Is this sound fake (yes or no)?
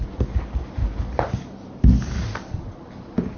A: no